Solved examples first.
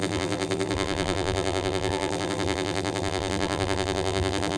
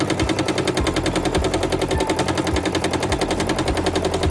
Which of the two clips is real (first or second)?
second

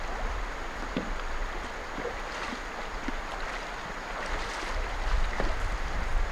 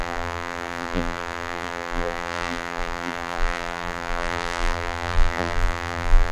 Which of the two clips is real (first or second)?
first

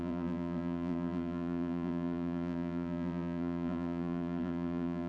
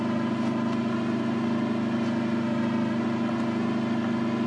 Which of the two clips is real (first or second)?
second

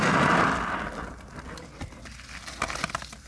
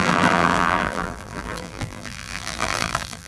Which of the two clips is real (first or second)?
first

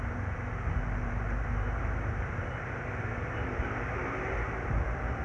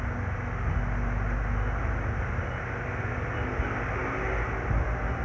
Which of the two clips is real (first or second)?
second